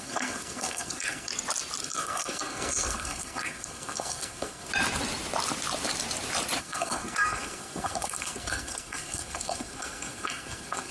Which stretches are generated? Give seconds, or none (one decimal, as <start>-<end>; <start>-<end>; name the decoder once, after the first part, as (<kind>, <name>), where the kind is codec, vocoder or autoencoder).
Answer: 0.0-1.3 (codec, SNAC); 1.8-4.7; 6.6-10.9